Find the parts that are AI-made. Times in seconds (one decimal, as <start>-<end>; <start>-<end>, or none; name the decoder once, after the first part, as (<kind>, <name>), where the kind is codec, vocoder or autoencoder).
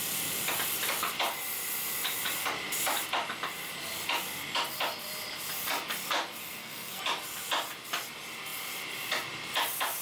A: 6.4-7.0 (codec, SNAC)